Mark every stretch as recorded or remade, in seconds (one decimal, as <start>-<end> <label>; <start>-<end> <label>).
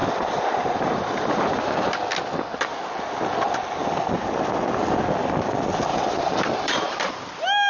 0.0-1.9 remade; 1.9-5.9 recorded; 5.9-7.1 remade; 7.1-7.7 recorded